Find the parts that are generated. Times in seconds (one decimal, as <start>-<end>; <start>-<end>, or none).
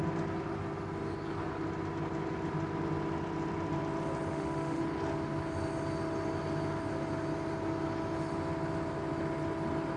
4.3-4.8